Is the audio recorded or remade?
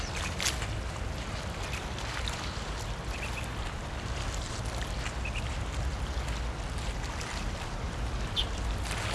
recorded